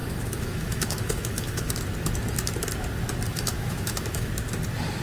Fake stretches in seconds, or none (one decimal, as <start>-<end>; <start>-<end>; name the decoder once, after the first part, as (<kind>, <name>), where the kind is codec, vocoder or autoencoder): 0.0-1.7 (autoencoder, DAC-VAE); 3.3-4.3